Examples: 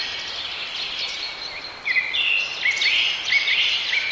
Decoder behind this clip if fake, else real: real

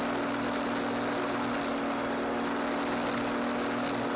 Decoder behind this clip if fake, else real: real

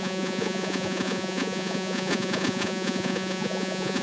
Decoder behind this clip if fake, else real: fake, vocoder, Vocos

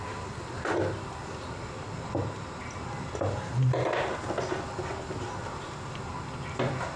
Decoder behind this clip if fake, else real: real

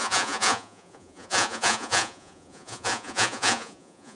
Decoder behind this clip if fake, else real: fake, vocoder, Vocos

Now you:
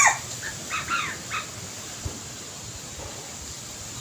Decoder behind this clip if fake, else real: real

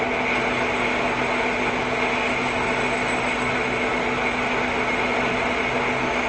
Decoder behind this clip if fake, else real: real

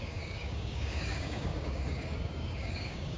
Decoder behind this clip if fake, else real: fake, codec, DAC